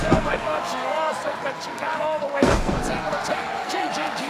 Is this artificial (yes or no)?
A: yes